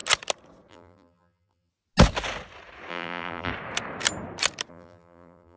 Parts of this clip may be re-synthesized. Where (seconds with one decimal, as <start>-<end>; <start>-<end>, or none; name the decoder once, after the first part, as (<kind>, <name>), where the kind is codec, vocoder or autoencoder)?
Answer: 0.7-1.7 (vocoder, BigVGAN v2); 2.9-3.5; 4.7-5.6